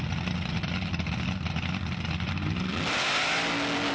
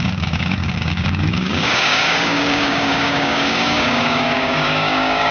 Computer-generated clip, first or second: second